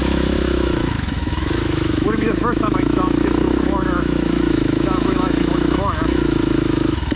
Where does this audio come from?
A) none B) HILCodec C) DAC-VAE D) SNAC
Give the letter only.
C